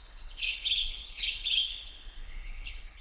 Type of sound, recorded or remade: remade